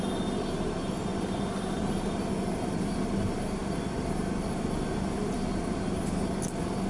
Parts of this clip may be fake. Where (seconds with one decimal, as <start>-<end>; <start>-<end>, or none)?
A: 1.1-1.9; 3.6-4.3